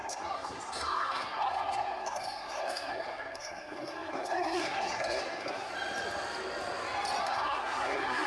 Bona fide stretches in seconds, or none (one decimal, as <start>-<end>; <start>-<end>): 5.7-7.2